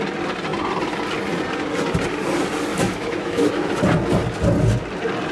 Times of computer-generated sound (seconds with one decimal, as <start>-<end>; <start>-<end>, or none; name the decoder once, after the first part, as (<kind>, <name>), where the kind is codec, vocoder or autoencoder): 2.7-3.7 (autoencoder, DAC-VAE)